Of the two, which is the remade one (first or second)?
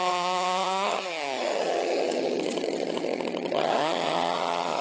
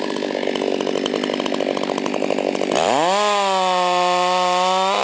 first